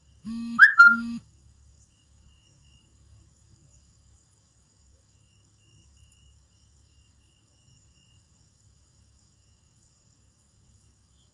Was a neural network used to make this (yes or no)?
yes